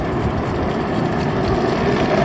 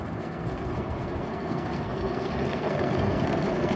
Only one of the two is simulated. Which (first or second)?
second